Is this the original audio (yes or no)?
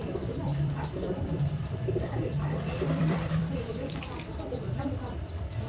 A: no